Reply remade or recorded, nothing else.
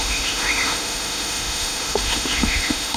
remade